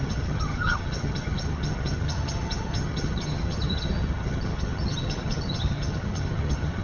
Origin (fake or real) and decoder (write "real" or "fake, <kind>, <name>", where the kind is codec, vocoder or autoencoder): fake, vocoder, HiFi-GAN